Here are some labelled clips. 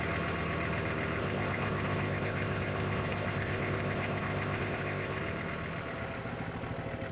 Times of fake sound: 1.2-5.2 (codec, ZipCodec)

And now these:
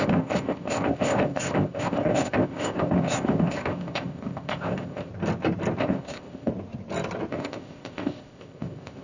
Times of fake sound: 0.0-5.1 (codec, ZipCodec); 5.8-6.5; 7.3-9.0

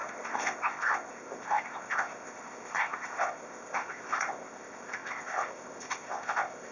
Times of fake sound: 0.0-6.7 (codec, ZipCodec)

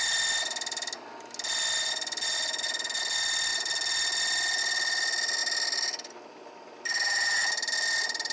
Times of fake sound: none